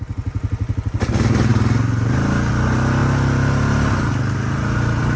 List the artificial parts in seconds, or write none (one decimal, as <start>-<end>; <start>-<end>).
none